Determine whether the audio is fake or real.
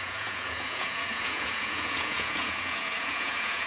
fake